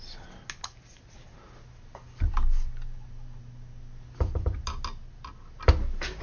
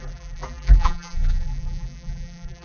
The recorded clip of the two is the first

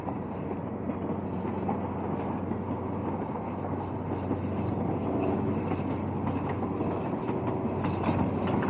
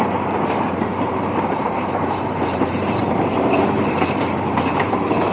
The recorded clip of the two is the first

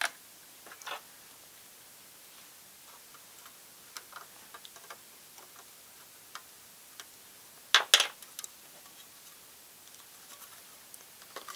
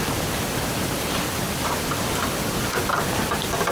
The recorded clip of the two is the first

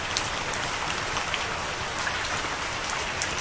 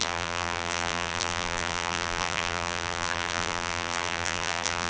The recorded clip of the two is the first